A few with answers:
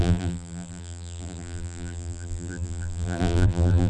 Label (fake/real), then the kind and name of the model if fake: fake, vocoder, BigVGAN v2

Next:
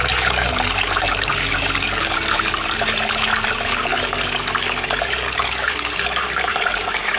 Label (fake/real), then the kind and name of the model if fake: fake, codec, DAC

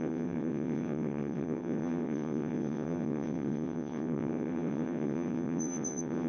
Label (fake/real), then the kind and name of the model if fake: fake, vocoder, WaveNeXt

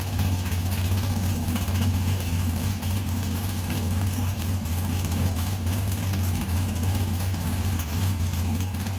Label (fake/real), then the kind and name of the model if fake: fake, codec, DAC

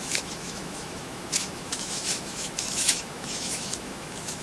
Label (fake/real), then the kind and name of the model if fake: fake, autoencoder, DAC-VAE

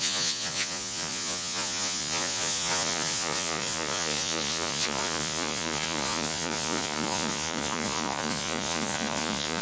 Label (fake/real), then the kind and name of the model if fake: fake, vocoder, Vocos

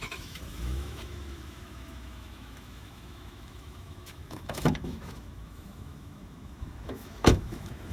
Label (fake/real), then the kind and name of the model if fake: fake, autoencoder, DAC-VAE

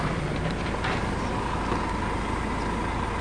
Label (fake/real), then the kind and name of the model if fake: real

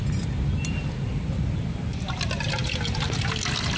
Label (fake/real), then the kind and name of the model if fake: real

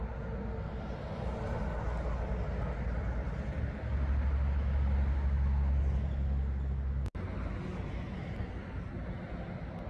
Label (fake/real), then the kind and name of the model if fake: real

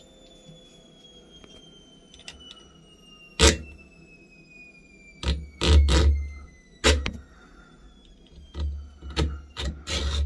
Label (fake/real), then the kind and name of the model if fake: real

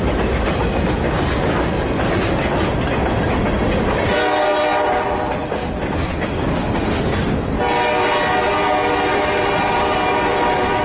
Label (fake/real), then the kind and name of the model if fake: real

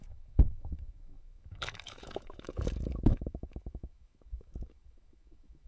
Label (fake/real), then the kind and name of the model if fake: fake, autoencoder, DAC-VAE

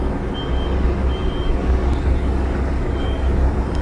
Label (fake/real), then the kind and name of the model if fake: fake, codec, DAC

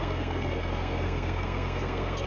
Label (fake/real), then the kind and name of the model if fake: fake, codec, SNAC